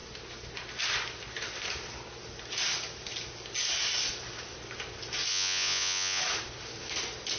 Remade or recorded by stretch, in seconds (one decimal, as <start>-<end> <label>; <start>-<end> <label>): 0.0-5.3 recorded; 5.3-6.2 remade; 6.2-7.4 recorded